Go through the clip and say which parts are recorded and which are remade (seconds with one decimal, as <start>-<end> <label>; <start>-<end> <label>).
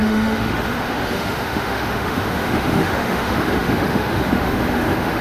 0.0-5.2 remade